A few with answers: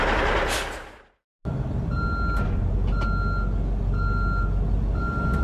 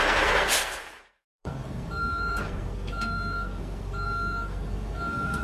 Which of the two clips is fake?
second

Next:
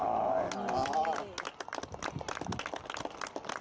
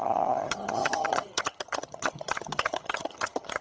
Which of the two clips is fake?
second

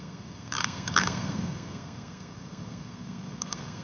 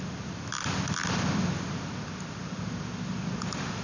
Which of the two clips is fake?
first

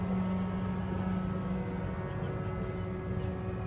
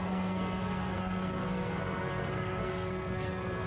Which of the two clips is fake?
second